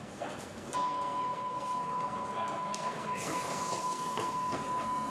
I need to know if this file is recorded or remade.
remade